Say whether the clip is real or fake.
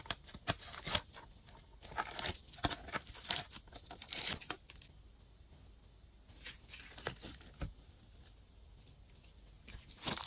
real